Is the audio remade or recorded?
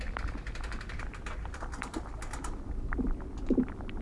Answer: recorded